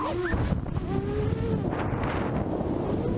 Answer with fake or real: real